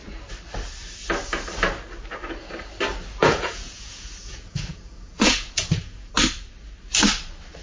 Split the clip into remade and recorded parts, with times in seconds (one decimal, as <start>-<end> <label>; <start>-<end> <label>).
0.0-3.2 recorded; 3.2-6.1 remade; 6.1-7.6 recorded